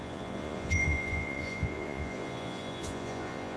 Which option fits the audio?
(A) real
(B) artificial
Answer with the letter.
B